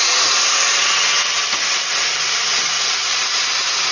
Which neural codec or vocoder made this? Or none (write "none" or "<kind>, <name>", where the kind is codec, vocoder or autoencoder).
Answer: none